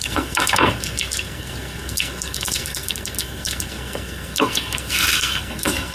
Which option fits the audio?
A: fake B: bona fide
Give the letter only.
A